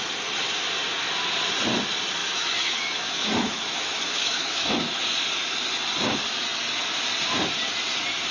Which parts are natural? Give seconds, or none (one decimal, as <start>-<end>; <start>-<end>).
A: 0.0-2.2; 5.0-8.3

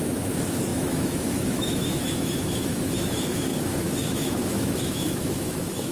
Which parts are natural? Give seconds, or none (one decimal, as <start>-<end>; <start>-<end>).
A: none

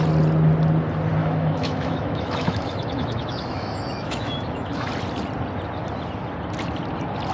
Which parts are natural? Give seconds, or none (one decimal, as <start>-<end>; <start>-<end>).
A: 0.0-1.2; 4.9-7.3

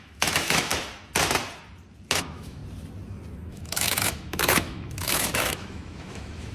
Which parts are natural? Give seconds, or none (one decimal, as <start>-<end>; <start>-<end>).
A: 0.7-2.1; 2.6-3.5

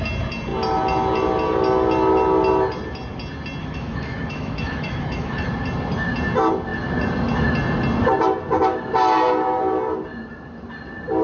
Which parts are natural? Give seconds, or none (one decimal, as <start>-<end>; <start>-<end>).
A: 0.0-3.6; 5.5-11.2

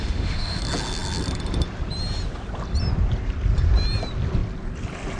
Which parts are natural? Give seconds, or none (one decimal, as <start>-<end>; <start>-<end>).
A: 0.6-5.2

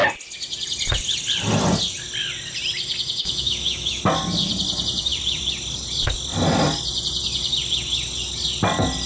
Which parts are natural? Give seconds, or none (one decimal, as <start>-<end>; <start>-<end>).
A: 0.0-3.2; 4.0-9.1